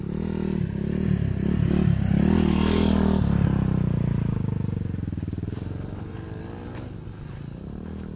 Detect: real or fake real